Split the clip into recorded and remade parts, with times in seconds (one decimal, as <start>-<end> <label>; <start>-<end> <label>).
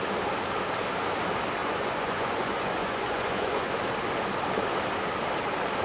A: 0.0-1.6 recorded; 1.6-3.7 remade; 3.7-5.8 recorded